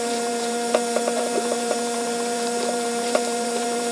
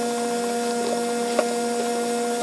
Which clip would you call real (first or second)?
second